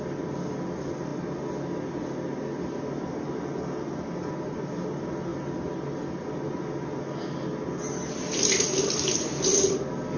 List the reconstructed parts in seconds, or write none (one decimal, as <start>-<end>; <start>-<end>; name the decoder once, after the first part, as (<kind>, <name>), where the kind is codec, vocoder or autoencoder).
none